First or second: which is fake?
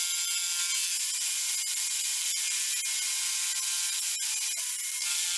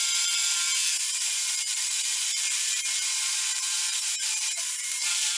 second